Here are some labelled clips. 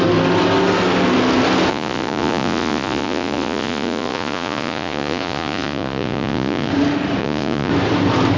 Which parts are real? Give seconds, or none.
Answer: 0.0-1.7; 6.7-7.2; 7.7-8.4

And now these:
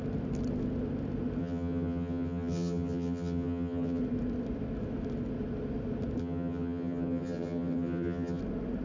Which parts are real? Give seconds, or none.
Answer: 0.0-1.4; 4.0-6.2; 8.4-8.8

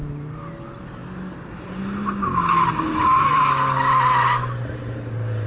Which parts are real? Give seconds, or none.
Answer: 0.0-5.5

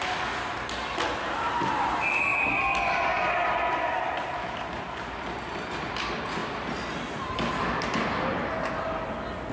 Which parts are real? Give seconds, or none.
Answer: 0.0-9.5